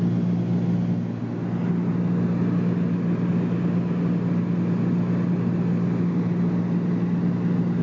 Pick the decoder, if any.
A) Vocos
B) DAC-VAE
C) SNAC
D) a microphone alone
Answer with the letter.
D